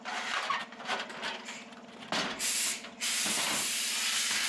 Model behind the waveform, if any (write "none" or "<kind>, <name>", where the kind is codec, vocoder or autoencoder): none